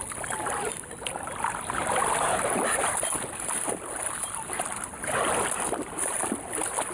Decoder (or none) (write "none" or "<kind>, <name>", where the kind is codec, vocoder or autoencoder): none